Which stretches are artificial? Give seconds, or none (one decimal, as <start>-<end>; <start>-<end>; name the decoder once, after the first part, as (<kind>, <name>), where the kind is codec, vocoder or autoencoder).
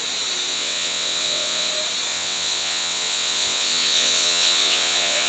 0.5-1.7 (vocoder, WaveNeXt); 2.1-5.3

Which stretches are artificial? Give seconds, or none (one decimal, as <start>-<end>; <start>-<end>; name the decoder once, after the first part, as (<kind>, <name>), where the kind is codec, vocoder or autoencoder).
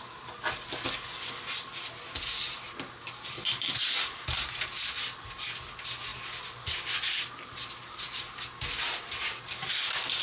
none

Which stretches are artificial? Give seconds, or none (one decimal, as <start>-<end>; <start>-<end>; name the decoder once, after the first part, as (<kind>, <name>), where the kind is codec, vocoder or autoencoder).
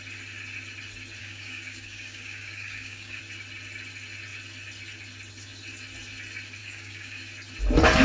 1.2-3.2 (codec, DAC); 6.6-7.2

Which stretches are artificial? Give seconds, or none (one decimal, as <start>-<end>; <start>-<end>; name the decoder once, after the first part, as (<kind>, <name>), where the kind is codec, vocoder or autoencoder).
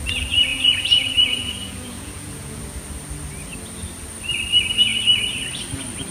0.5-2.6 (vocoder, Vocos)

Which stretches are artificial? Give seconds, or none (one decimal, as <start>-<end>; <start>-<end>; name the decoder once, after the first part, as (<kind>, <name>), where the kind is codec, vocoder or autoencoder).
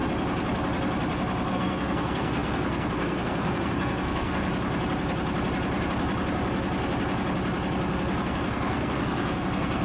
1.5-4.5 (codec, SNAC); 8.2-9.8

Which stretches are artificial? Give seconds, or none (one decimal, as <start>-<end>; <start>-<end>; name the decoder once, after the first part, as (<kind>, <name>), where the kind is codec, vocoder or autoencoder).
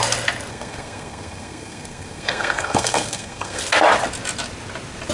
0.5-3.6 (codec, SNAC)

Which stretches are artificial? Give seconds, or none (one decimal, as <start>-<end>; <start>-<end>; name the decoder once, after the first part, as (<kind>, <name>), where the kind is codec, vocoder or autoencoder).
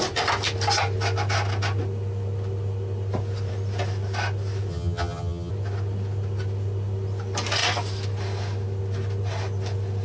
4.7-5.5 (vocoder, HiFi-GAN)